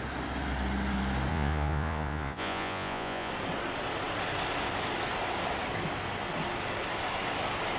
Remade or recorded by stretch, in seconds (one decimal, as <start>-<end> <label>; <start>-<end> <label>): 0.0-1.3 recorded; 1.3-3.3 remade; 3.3-7.8 recorded